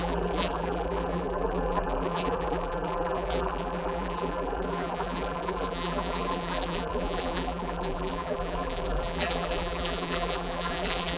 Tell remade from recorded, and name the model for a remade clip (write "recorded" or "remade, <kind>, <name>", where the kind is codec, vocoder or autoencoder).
remade, vocoder, BigVGAN v2